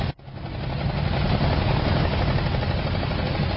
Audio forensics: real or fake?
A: real